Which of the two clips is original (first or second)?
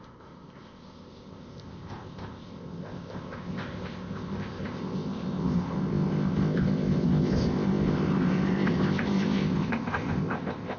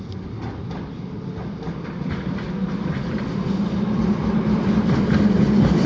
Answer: second